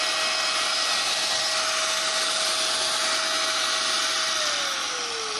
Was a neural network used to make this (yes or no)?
no